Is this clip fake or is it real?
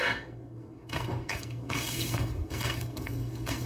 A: fake